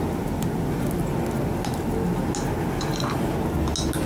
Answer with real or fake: real